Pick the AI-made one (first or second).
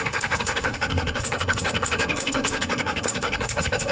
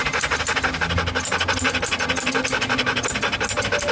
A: first